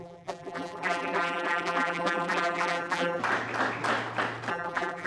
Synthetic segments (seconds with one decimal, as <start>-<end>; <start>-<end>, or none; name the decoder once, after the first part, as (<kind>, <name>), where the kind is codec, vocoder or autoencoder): 0.0-3.2 (vocoder, BigVGAN v2); 4.5-5.1